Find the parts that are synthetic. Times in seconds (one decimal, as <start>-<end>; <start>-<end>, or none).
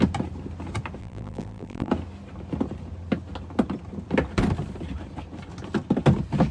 1.0-1.9